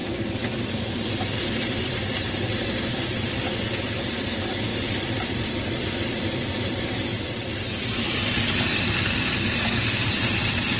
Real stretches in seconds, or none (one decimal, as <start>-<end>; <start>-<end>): 4.3-4.7; 8.6-10.8